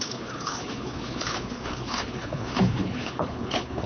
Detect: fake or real fake